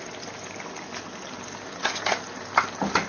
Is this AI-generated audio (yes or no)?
no